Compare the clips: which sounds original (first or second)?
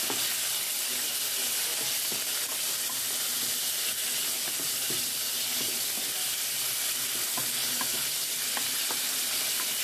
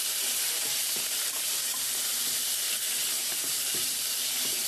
first